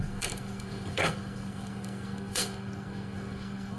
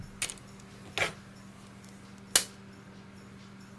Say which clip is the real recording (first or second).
second